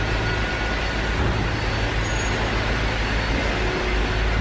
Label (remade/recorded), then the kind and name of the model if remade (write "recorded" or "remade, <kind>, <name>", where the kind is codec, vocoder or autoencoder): recorded